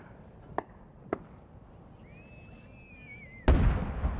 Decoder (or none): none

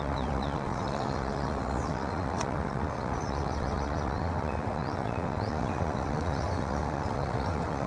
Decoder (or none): vocoder, WaveNeXt